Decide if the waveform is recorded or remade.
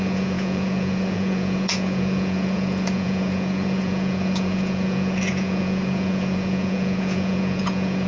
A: remade